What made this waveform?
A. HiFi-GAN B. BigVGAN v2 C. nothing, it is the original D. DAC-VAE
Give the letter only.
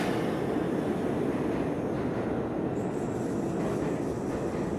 C